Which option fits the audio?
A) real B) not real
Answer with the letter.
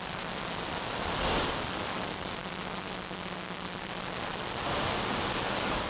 A